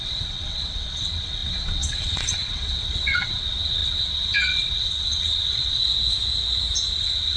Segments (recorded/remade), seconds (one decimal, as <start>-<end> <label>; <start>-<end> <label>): 0.0-5.8 remade; 5.8-7.0 recorded; 7.0-7.4 remade